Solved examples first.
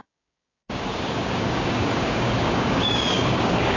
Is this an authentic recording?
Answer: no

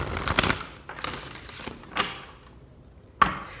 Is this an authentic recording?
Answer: yes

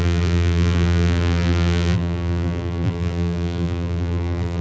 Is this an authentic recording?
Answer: no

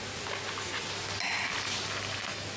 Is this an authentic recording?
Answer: yes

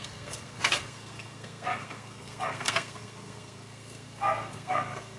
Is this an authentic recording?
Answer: no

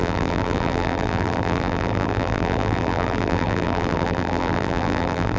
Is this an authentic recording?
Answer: no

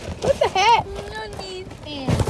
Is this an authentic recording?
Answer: yes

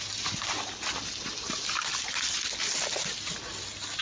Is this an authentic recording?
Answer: yes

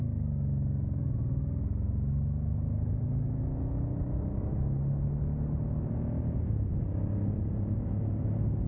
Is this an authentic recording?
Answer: yes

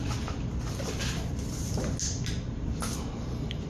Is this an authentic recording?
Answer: yes